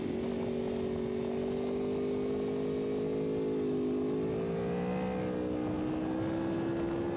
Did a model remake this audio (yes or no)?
no